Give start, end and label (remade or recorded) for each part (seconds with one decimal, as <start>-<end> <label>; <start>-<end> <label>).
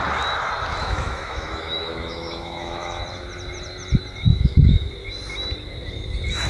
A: 0.0-0.8 recorded; 0.8-3.0 remade; 3.0-4.3 recorded; 4.3-4.9 remade; 4.9-6.5 recorded